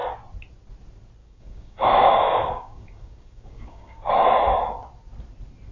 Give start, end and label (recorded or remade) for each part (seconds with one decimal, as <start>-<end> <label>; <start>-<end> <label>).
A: 0.0-1.2 recorded; 1.2-4.1 remade; 4.1-5.7 recorded